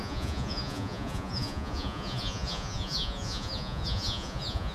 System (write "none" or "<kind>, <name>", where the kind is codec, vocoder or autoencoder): vocoder, Vocos